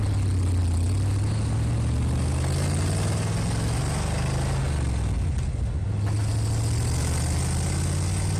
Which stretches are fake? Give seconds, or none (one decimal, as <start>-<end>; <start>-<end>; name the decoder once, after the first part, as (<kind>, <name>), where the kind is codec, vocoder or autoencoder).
none